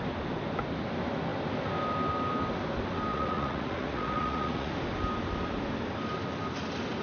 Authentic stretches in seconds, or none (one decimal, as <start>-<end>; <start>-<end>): 0.0-3.1; 4.7-7.0